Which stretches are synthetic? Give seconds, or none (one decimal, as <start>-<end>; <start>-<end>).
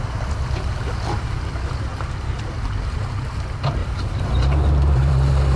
3.8-5.6